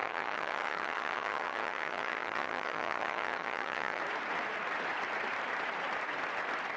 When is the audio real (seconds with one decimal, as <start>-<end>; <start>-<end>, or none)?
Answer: 4.0-6.8